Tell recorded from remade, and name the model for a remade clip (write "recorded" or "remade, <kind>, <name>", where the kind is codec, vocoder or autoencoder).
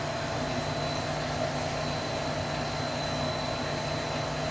recorded